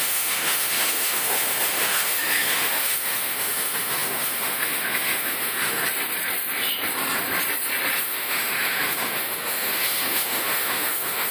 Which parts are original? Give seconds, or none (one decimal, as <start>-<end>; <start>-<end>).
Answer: 5.8-8.0